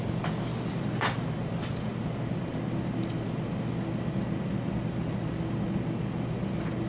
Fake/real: real